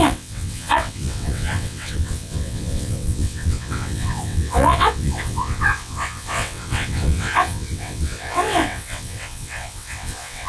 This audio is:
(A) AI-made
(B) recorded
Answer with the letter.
A